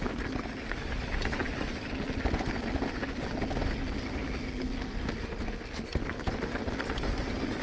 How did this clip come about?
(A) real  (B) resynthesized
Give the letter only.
A